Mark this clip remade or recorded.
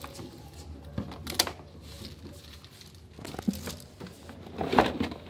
recorded